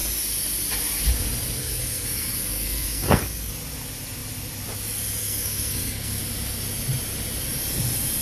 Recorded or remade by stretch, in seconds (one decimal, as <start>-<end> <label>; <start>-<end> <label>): 0.0-1.6 recorded; 1.6-3.5 remade; 3.5-5.2 recorded; 5.2-6.2 remade; 6.2-8.2 recorded